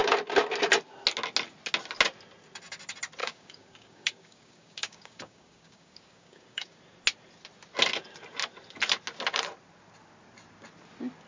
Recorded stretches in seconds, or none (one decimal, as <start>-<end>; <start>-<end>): 0.0-3.2; 6.8-11.3